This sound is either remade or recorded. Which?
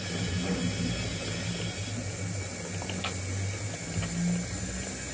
recorded